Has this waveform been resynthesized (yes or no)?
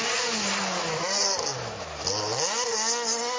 no